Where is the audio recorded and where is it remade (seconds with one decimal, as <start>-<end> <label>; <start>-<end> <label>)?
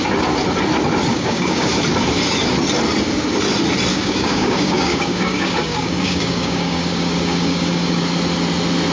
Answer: 0.0-1.1 recorded; 1.1-1.7 remade; 1.7-3.9 recorded; 3.9-8.0 remade; 8.0-8.9 recorded